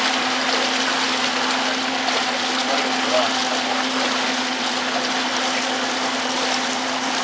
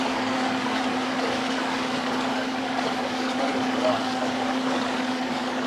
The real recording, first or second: first